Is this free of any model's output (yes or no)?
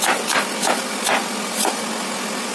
yes